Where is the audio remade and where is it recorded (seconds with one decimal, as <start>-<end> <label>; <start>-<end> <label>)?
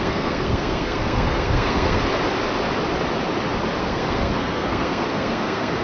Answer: 0.0-2.0 remade; 2.0-3.8 recorded; 3.8-5.8 remade